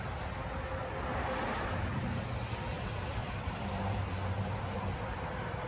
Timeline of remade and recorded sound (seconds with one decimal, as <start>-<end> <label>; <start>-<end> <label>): 0.0-0.8 recorded; 0.8-2.4 remade; 2.4-3.2 recorded; 3.2-4.6 remade; 4.6-5.7 recorded